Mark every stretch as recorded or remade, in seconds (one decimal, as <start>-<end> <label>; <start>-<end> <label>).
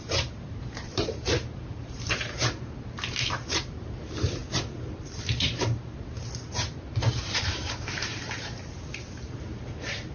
0.0-2.4 remade; 2.4-3.1 recorded; 3.1-4.4 remade; 4.4-6.5 recorded; 6.5-10.1 remade